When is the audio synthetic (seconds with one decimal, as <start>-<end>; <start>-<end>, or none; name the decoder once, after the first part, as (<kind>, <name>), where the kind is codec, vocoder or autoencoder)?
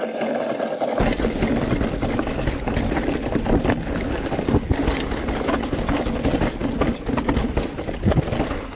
none